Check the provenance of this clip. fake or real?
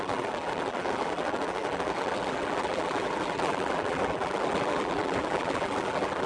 fake